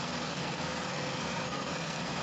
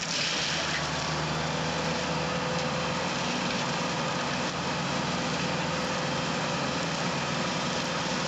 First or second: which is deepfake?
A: first